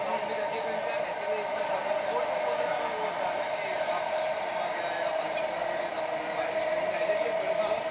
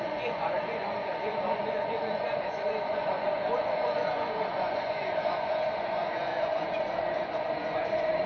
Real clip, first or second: first